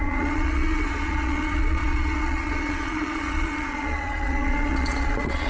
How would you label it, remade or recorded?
remade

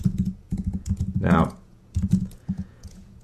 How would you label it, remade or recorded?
remade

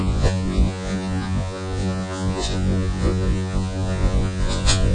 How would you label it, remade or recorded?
remade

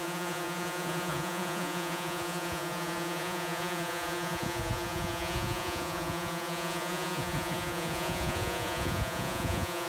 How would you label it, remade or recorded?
remade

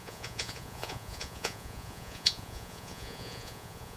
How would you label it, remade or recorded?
remade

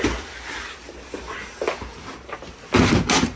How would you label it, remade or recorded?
recorded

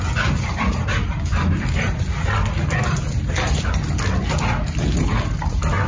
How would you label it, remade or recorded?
recorded